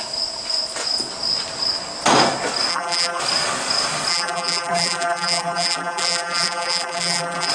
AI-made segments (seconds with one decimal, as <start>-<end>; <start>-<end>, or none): 2.7-3.2; 4.1-7.5